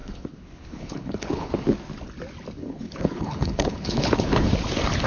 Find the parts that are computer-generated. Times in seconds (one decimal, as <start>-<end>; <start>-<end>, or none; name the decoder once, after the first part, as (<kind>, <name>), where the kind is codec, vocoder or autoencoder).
0.0-1.5 (codec, HILCodec); 2.6-4.5